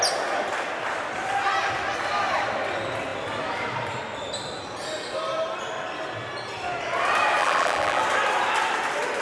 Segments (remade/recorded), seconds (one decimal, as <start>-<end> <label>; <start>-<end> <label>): 0.0-7.4 recorded; 7.4-8.0 remade; 8.0-9.2 recorded